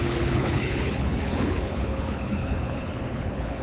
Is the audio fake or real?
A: fake